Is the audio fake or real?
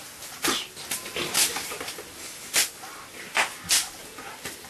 real